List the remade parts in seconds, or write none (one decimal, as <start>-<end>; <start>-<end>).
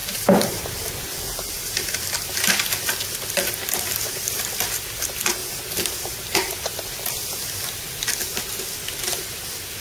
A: 0.0-4.5; 5.4-8.6